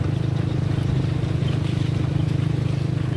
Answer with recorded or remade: remade